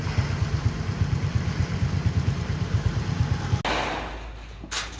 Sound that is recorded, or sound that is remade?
recorded